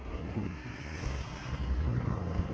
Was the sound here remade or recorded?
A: remade